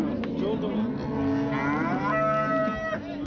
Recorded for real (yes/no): yes